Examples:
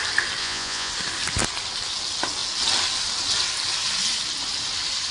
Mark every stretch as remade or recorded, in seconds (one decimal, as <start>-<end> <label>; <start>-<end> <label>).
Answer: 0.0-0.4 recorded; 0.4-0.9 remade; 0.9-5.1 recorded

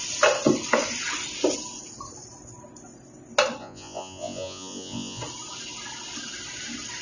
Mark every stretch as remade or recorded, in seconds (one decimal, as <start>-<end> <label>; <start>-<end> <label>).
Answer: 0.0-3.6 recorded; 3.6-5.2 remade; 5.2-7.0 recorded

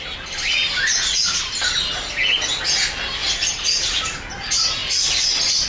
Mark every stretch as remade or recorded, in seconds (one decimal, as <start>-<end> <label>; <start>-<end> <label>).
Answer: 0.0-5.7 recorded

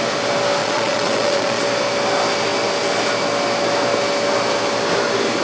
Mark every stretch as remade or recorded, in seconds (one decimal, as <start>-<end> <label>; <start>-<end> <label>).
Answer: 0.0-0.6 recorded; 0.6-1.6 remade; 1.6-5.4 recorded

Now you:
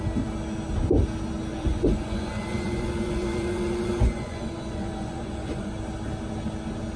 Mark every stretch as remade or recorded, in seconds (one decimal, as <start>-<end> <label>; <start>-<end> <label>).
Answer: 0.0-1.5 recorded; 1.5-5.7 remade; 5.7-7.0 recorded

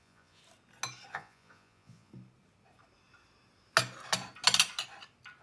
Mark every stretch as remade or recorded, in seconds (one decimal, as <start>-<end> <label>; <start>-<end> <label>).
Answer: 0.0-0.4 remade; 0.4-1.1 recorded; 1.1-2.1 remade; 2.1-5.4 recorded